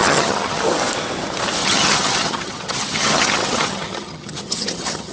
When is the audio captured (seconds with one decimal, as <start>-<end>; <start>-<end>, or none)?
0.6-1.6